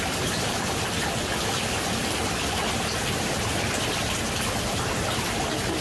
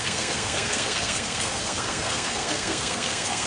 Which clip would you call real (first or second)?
first